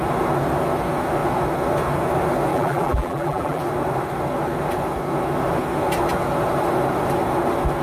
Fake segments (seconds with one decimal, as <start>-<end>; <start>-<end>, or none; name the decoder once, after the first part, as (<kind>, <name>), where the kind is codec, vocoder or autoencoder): 2.5-3.6 (vocoder, BigVGAN v2)